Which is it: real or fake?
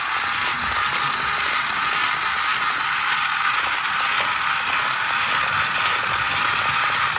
real